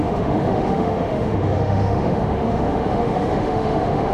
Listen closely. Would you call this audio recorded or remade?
remade